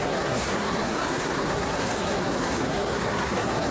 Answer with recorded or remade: remade